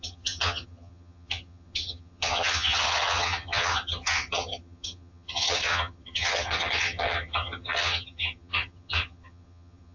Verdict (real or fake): fake